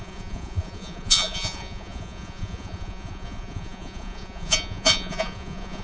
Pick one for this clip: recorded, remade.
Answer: remade